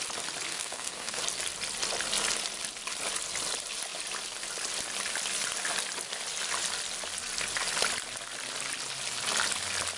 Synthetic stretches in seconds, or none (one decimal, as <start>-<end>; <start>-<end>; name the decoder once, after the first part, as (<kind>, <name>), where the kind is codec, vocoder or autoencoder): 0.5-1.2 (codec, SNAC)